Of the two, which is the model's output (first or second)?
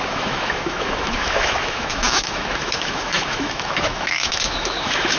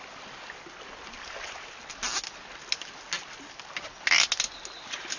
first